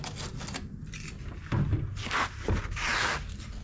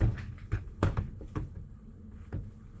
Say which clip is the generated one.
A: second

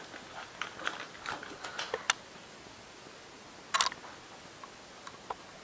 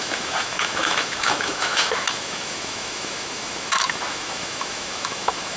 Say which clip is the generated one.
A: second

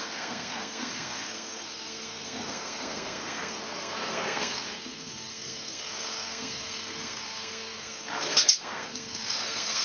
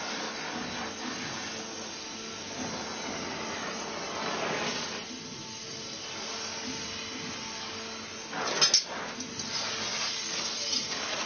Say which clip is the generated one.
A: first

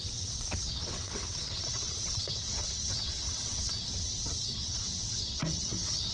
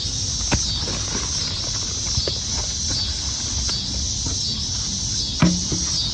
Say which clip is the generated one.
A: first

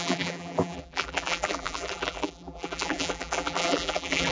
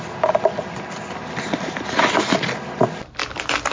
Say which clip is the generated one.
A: first